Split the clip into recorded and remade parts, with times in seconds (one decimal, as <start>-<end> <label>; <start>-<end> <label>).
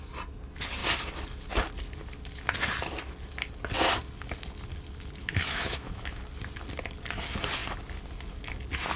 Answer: 0.0-5.2 recorded; 5.2-6.2 remade; 6.2-9.0 recorded